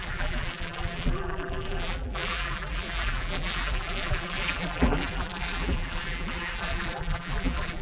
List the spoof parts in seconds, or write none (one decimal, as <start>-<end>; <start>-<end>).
0.0-7.8